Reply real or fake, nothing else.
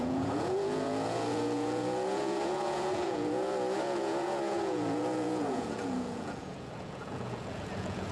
fake